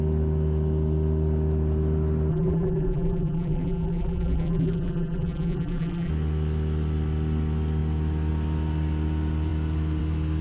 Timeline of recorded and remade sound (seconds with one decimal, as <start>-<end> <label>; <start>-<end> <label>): 0.0-2.3 recorded; 2.3-6.1 remade; 6.1-10.4 recorded